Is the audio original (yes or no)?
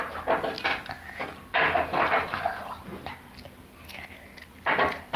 yes